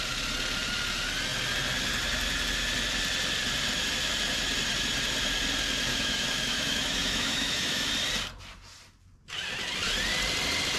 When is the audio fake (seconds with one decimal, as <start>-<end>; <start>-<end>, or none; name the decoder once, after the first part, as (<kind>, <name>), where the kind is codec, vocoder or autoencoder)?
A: 5.9-7.9 (autoencoder, DAC-VAE)